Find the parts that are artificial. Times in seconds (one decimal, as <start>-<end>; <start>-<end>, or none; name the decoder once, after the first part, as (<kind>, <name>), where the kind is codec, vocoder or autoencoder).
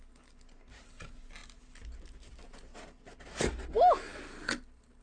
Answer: none